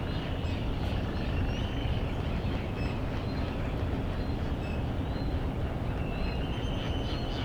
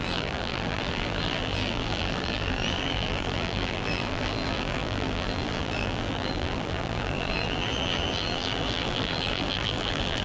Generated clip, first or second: second